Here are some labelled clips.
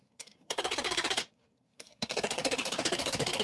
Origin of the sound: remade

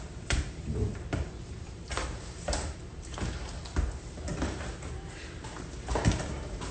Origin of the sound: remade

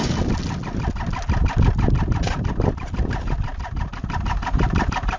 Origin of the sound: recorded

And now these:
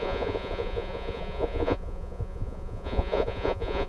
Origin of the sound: remade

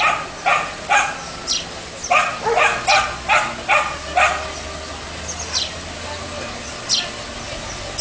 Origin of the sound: recorded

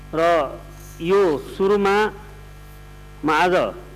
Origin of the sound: recorded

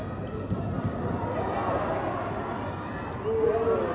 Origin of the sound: recorded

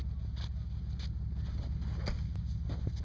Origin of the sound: recorded